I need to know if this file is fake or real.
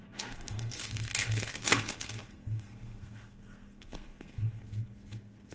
fake